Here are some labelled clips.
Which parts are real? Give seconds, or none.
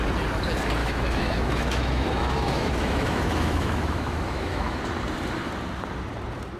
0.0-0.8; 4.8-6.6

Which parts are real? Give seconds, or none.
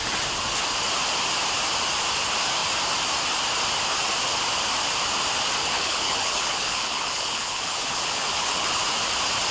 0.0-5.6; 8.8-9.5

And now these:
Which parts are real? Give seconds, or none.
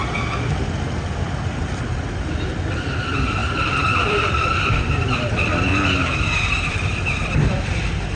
0.0-1.6; 5.7-6.7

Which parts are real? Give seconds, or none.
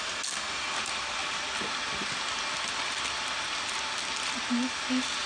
0.0-5.3